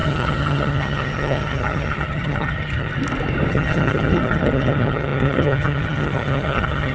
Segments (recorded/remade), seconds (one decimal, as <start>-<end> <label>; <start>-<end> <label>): 0.0-2.9 remade; 2.9-3.5 recorded; 3.5-6.9 remade